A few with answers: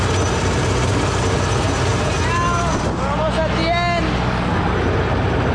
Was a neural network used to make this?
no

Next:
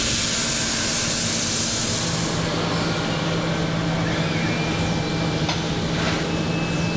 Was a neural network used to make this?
no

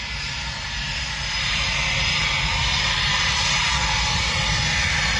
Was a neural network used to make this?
no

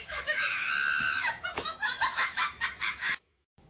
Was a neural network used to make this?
yes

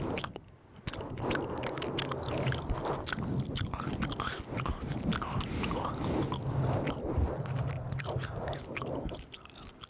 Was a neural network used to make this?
no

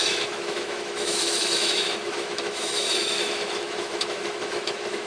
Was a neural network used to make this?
yes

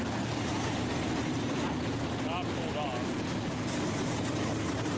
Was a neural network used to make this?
no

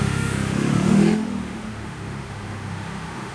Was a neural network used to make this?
yes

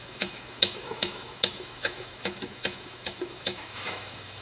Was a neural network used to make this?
yes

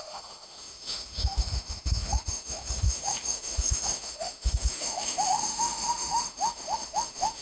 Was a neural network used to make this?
yes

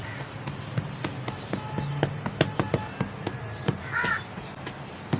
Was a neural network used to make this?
no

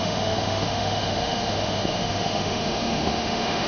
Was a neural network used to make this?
yes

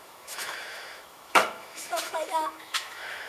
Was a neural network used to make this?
yes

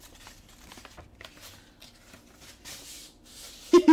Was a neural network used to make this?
no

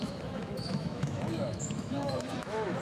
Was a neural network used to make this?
yes